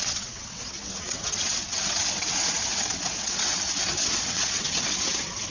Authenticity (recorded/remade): remade